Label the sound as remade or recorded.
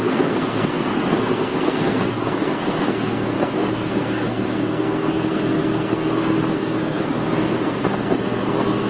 remade